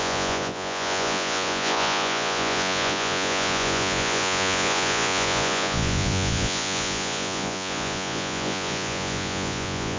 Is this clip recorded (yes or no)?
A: no